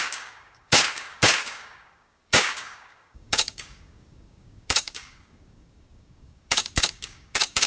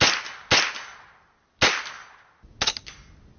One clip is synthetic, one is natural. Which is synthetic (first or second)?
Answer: first